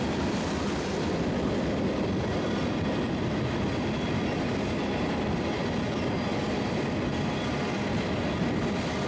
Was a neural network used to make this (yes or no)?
no